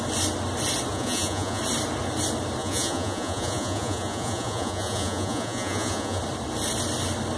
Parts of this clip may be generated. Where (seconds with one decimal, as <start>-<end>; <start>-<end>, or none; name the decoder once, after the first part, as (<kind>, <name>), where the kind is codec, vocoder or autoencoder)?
0.9-1.6 (vocoder, Vocos); 2.6-6.2